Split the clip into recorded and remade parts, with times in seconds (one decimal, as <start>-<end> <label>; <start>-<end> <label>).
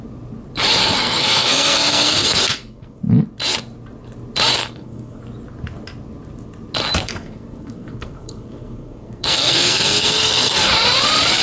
0.0-0.8 recorded; 0.8-3.0 remade; 3.0-4.5 recorded; 4.5-5.2 remade; 5.2-7.0 recorded; 7.0-10.7 remade; 10.7-11.4 recorded